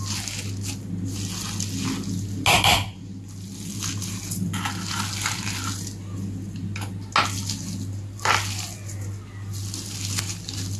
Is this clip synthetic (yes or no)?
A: no